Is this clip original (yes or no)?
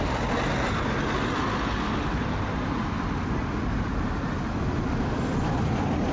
yes